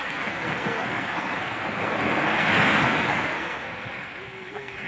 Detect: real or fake fake